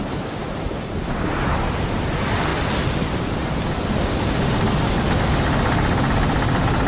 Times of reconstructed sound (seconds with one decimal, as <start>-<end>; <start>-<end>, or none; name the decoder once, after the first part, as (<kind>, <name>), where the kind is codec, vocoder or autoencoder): 0.0-2.5 (vocoder, BigVGAN v2)